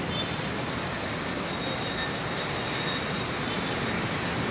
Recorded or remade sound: recorded